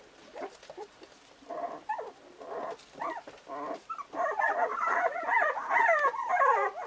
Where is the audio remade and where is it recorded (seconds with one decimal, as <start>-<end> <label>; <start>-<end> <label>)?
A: 0.0-4.7 recorded; 4.7-5.2 remade; 5.2-6.9 recorded